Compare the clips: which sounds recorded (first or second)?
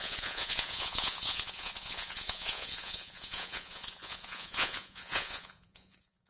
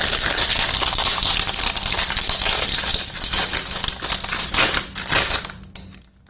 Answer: second